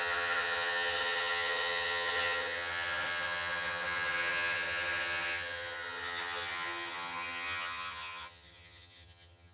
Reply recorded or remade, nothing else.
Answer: remade